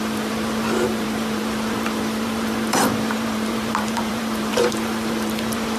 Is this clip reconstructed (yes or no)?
yes